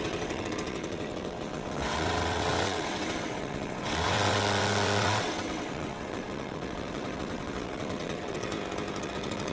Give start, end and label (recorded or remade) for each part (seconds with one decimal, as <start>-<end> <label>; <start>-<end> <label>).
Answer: 0.0-8.5 remade; 8.5-9.0 recorded; 9.0-9.5 remade